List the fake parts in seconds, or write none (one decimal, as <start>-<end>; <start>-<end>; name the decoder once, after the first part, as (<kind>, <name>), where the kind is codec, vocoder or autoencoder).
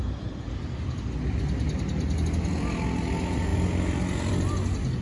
none